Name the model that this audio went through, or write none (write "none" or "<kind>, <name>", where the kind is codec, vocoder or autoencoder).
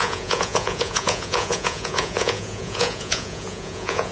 vocoder, Vocos